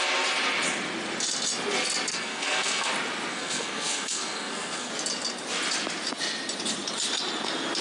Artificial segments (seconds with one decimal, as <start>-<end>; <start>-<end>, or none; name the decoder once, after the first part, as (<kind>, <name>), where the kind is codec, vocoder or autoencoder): 2.1-2.9 (codec, SNAC); 3.3-4.9